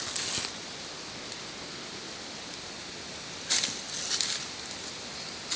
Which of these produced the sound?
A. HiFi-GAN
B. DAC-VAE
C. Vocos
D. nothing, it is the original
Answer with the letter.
D